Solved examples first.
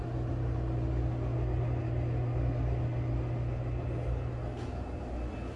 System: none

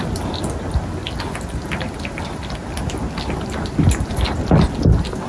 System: none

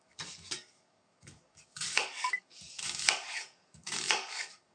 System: codec, DAC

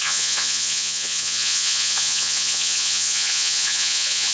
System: vocoder, Vocos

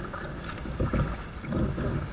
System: none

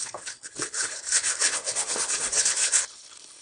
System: codec, HILCodec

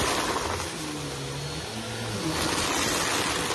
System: none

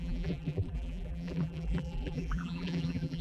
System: vocoder, BigVGAN v2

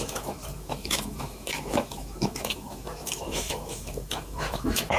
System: autoencoder, DAC-VAE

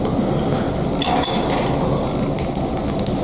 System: none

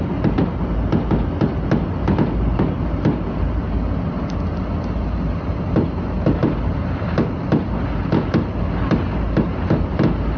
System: none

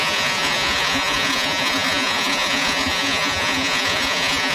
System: vocoder, Vocos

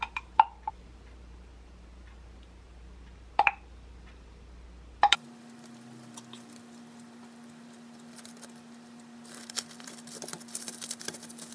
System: vocoder, BigVGAN v2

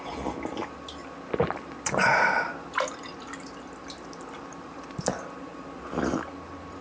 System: none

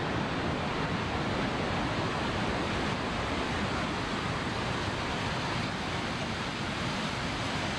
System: none